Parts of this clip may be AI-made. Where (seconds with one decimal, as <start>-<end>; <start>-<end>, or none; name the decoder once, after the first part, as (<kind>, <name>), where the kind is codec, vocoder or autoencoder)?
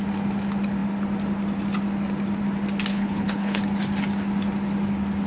2.9-3.6 (codec, HILCodec)